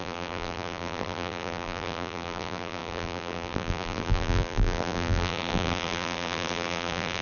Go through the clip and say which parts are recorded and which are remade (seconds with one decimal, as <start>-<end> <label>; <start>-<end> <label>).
0.0-7.2 remade